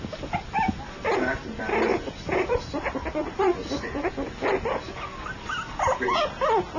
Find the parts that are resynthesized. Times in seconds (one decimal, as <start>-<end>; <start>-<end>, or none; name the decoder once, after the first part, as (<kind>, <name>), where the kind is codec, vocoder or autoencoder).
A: 1.9-4.1 (vocoder, BigVGAN v2)